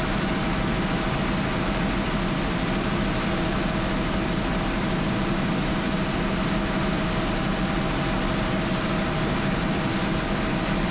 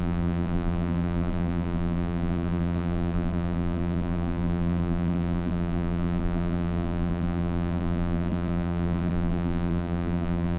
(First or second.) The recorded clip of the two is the first